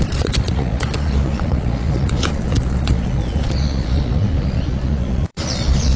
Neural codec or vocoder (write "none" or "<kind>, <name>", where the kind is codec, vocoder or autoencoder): vocoder, Vocos